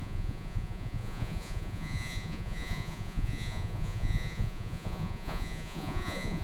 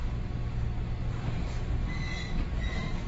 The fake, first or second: first